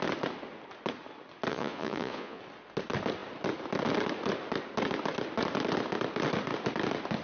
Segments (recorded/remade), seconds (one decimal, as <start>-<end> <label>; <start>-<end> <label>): 0.0-1.5 recorded; 1.5-2.4 remade; 2.4-7.2 recorded